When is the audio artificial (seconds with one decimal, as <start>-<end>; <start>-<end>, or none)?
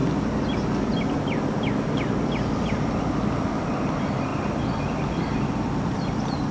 3.9-4.3; 5.1-6.5